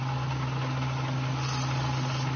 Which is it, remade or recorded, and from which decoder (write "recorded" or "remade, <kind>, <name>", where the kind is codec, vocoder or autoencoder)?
recorded